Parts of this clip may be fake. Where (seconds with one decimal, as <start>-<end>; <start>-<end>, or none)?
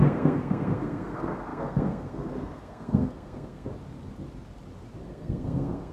0.0-3.7; 5.0-5.9